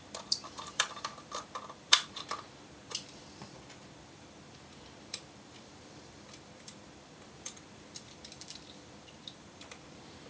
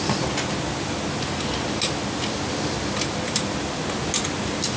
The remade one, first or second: first